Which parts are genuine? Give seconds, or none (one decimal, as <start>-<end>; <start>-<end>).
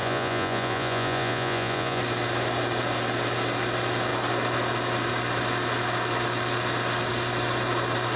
2.0-8.2